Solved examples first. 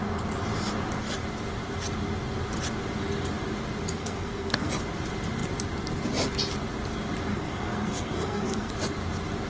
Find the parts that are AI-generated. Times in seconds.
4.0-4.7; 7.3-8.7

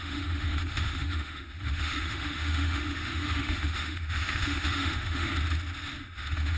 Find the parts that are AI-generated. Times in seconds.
0.0-5.3; 6.0-6.6

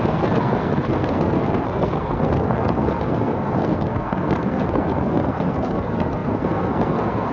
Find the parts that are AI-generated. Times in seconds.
0.0-7.3

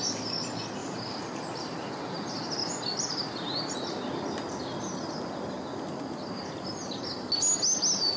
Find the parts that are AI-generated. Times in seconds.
0.8-2.0; 2.6-4.0

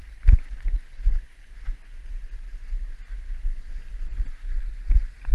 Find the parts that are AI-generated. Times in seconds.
none

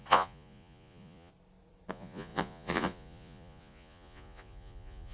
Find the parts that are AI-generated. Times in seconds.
0.0-1.3; 1.9-5.1